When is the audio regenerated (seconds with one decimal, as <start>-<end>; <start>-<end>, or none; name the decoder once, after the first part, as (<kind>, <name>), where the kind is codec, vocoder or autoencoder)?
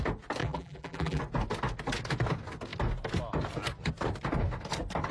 0.4-1.2 (vocoder, BigVGAN v2)